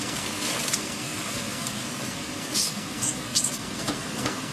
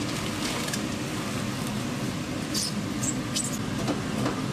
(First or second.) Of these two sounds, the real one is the second